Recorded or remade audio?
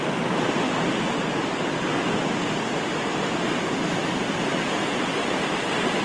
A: recorded